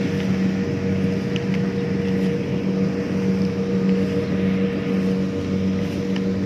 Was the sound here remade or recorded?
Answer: recorded